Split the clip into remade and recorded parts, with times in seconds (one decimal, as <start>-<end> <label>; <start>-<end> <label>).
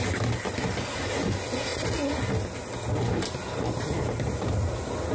0.0-5.1 recorded